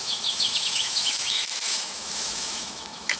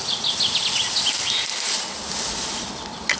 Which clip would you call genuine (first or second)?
second